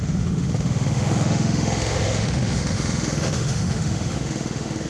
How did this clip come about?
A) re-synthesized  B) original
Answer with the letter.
A